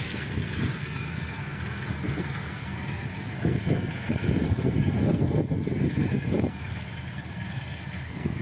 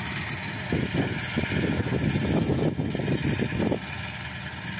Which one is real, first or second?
second